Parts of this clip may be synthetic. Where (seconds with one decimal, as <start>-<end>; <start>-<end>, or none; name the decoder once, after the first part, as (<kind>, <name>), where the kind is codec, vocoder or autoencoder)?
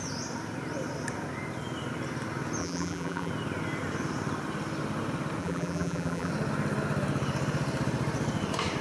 2.6-3.3 (vocoder, BigVGAN v2); 5.4-6.3